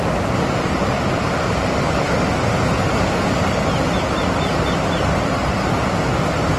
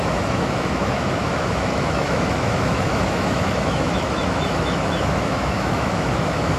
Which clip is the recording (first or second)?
first